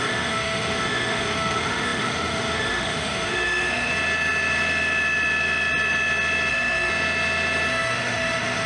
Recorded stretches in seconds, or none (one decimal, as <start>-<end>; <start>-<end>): 3.9-6.5; 6.9-7.7